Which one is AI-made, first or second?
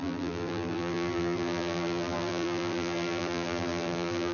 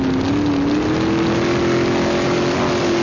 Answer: first